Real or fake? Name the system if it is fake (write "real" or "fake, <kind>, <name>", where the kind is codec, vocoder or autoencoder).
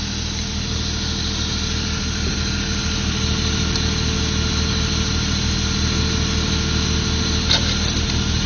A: real